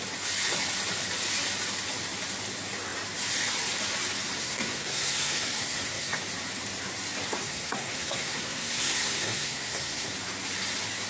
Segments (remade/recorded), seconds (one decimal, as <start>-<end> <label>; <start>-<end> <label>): 0.0-4.4 recorded; 4.4-6.2 remade; 6.2-7.4 recorded; 7.4-10.1 remade; 10.1-11.1 recorded